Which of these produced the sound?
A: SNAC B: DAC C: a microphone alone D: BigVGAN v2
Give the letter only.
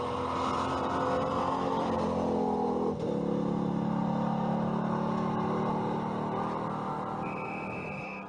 C